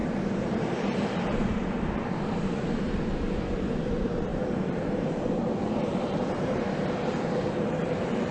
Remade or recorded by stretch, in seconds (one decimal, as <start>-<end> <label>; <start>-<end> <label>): 0.0-8.3 remade